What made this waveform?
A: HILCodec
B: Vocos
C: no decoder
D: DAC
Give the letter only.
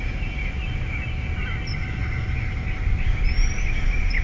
C